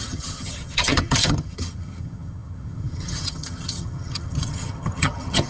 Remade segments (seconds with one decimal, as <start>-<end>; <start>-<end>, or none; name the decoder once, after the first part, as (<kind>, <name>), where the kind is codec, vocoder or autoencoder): 0.0-5.5 (vocoder, HiFi-GAN)